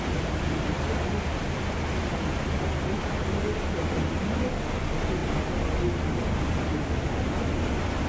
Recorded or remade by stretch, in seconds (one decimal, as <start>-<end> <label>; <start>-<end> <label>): 0.0-8.1 recorded